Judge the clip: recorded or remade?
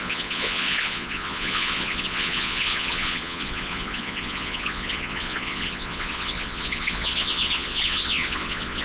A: remade